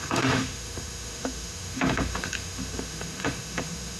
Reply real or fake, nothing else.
fake